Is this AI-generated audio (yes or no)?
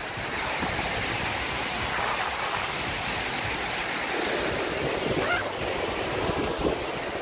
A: no